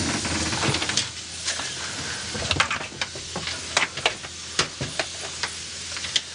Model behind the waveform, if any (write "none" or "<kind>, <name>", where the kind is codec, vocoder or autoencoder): none